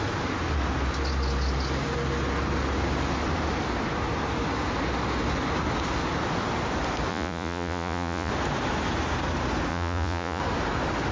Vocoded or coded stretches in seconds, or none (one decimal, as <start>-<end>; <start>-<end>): 7.1-8.3; 9.7-10.4